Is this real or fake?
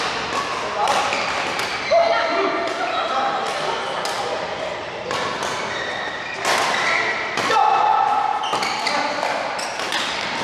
real